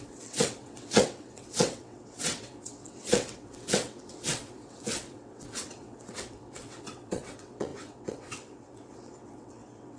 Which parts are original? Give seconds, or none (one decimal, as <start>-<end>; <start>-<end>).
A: none

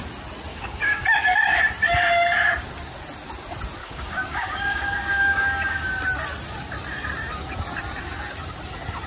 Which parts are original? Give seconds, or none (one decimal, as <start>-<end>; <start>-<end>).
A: 0.0-0.5; 1.6-3.8; 5.9-9.1

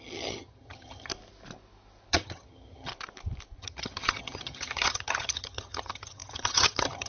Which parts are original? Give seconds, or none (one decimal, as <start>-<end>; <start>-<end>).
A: 1.1-2.1; 2.9-3.6

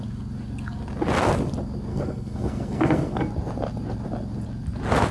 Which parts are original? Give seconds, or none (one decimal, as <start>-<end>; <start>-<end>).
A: 0.0-1.9; 3.2-5.1